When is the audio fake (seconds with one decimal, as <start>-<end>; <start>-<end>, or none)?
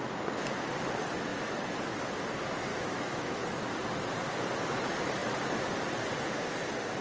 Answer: 2.7-3.4